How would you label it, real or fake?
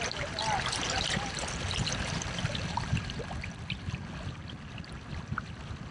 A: real